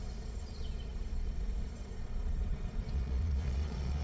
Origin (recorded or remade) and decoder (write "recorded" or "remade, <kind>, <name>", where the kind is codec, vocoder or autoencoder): remade, vocoder, Vocos